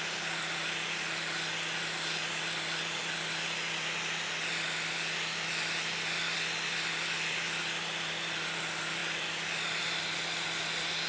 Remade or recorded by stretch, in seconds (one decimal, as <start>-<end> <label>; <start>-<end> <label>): 0.0-11.1 recorded